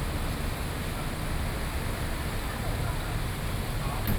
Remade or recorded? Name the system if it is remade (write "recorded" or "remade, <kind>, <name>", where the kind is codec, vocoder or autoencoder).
recorded